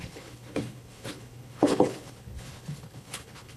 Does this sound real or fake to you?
fake